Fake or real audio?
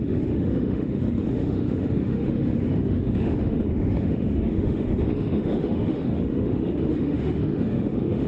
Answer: fake